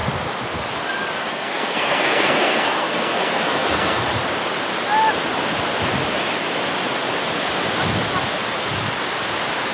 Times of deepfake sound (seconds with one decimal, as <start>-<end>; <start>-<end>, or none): 1.2-4.1